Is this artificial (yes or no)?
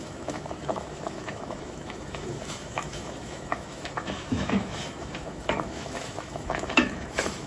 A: yes